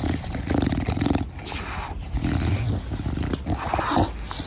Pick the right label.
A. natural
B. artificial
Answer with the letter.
A